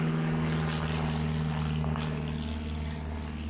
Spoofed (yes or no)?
no